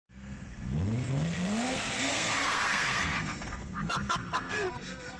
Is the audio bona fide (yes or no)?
no